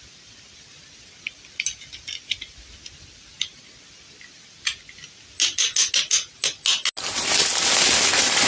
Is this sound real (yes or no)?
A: yes